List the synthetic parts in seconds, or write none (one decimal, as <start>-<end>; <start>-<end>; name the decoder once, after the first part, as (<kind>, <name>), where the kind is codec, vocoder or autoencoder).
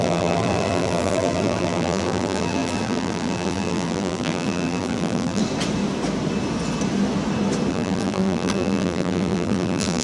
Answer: 0.0-5.4 (vocoder, BigVGAN v2); 7.7-10.0